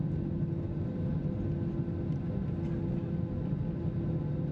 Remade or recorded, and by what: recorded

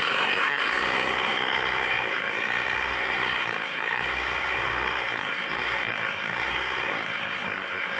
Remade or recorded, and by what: remade, codec, SNAC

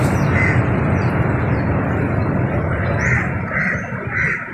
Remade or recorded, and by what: recorded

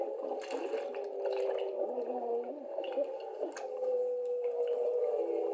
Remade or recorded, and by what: recorded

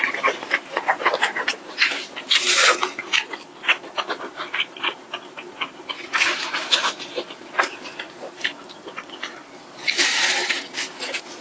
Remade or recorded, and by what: recorded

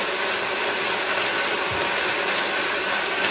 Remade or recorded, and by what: recorded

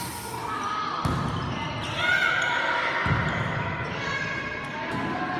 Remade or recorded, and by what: recorded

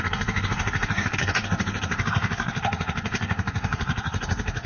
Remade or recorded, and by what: remade, codec, SNAC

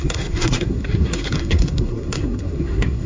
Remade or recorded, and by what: remade, codec, SNAC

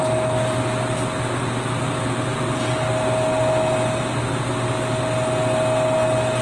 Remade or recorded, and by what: recorded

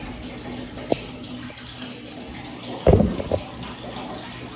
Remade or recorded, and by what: recorded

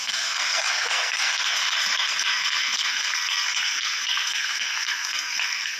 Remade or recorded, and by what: remade, codec, SNAC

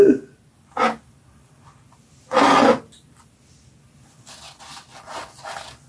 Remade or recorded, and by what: recorded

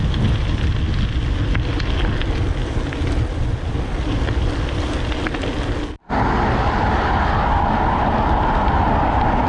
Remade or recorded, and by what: recorded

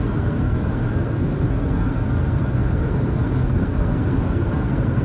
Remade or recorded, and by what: remade, codec, SNAC